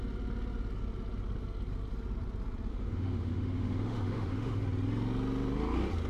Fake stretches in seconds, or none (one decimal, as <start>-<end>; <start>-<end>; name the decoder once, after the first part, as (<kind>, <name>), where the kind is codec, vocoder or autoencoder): 2.7-4.6 (autoencoder, DAC-VAE)